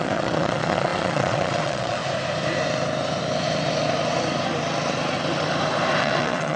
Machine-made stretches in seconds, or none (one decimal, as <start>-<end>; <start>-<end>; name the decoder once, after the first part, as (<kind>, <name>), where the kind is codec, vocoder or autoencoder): 0.0-2.0 (vocoder, Vocos); 6.0-6.6